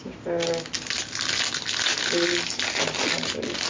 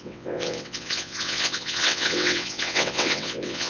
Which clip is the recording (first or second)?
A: first